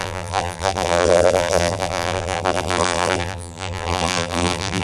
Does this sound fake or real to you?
fake